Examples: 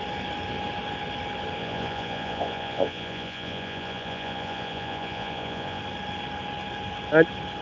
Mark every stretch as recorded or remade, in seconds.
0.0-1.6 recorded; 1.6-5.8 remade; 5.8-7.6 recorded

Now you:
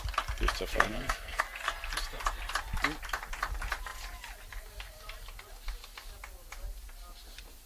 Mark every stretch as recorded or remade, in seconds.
0.0-0.7 recorded; 0.7-1.4 remade; 1.4-7.7 recorded

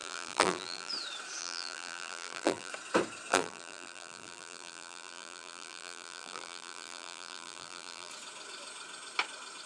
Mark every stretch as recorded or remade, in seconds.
0.0-0.9 remade; 0.9-1.4 recorded; 1.4-2.7 remade; 2.7-3.3 recorded; 3.3-8.1 remade; 8.1-9.7 recorded

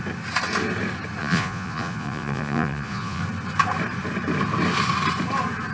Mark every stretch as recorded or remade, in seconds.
0.0-1.2 recorded; 1.2-3.2 remade; 3.2-5.7 recorded

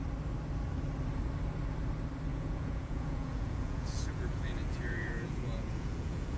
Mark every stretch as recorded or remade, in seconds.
0.0-2.3 recorded; 2.3-6.4 remade

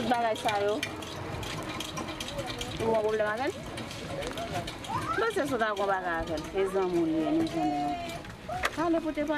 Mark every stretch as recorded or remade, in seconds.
0.0-2.9 recorded; 2.9-3.5 remade; 3.5-9.4 recorded

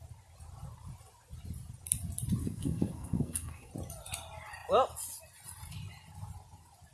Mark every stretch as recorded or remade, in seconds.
0.0-2.4 recorded; 2.4-3.7 remade; 3.7-6.9 recorded